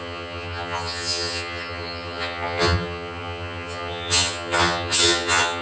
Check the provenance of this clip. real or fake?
fake